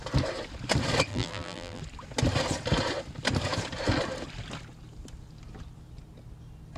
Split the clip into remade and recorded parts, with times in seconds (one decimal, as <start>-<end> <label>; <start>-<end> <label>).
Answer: 0.0-1.1 recorded; 1.1-1.8 remade; 1.8-6.8 recorded